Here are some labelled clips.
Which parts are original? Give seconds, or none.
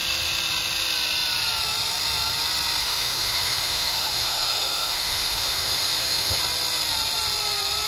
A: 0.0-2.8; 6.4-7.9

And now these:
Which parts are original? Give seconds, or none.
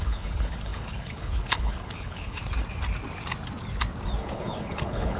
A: 2.4-4.2